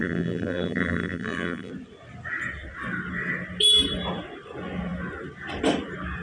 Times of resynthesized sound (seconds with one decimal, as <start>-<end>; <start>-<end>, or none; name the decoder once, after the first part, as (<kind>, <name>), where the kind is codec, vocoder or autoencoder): 0.0-1.7 (vocoder, BigVGAN v2)